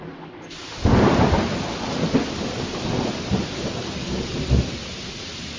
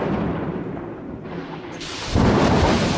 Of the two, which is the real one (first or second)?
first